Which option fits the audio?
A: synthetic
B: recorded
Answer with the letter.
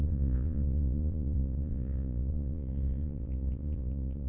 A